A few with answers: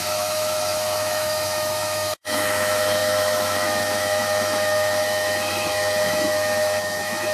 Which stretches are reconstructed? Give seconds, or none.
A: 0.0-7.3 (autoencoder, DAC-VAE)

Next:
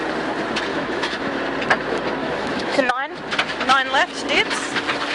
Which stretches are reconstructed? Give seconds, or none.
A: 0.7-1.4 (autoencoder, DAC-VAE); 2.2-2.9

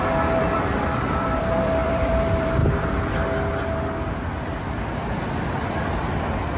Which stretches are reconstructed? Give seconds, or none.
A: 0.0-2.6 (vocoder, BigVGAN v2)